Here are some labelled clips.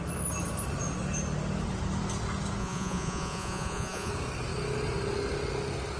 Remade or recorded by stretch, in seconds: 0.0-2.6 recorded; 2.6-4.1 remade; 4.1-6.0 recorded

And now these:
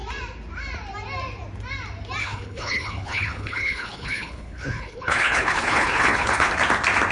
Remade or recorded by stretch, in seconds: 0.0-2.2 recorded; 2.2-6.5 remade; 6.5-7.1 recorded

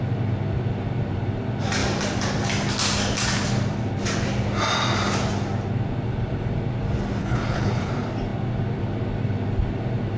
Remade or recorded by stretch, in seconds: 0.0-7.2 recorded; 7.2-7.9 remade; 7.9-10.2 recorded